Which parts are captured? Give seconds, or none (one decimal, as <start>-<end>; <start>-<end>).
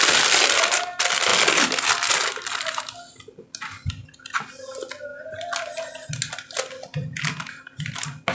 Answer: 0.0-8.3